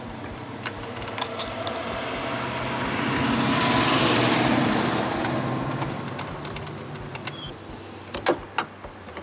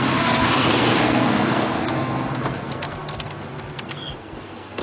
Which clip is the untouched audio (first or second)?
first